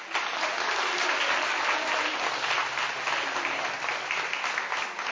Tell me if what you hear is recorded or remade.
recorded